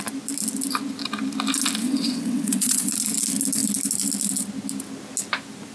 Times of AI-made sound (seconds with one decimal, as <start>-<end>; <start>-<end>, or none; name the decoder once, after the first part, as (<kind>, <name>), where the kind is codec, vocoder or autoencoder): 1.8-2.9 (vocoder, WaveNeXt)